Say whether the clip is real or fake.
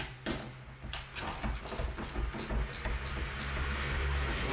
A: real